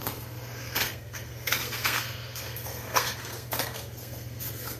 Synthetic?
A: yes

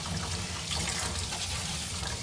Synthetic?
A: no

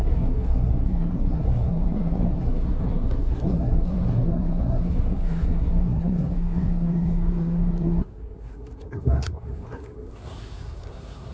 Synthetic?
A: yes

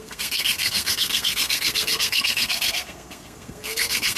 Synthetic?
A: yes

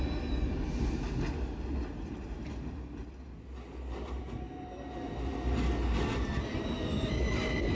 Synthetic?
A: no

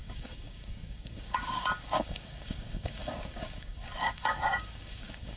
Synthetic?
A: yes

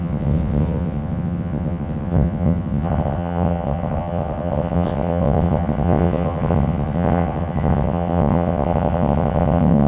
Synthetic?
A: yes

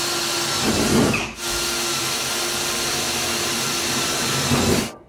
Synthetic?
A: no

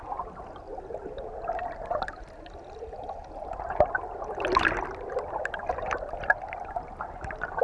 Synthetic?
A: no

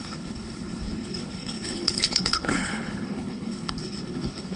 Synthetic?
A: yes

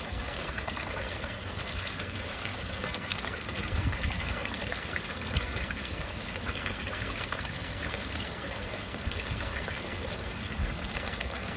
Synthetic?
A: yes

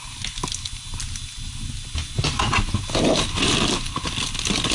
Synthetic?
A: no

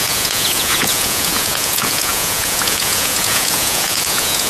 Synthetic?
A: yes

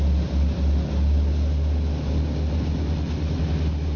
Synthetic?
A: no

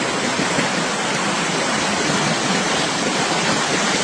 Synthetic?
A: no